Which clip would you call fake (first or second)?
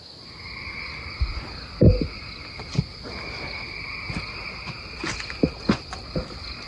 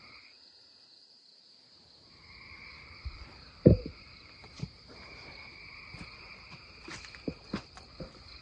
second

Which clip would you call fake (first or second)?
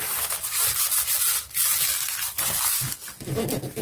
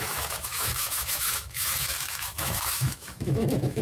second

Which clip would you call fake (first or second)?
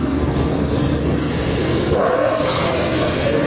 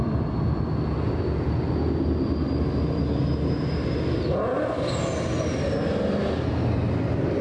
first